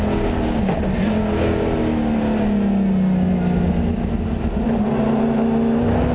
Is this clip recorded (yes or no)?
yes